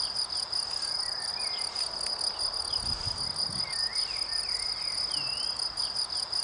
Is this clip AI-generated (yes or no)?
no